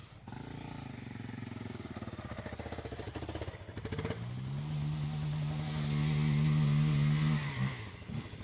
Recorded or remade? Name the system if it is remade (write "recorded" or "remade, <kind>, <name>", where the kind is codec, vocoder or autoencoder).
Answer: recorded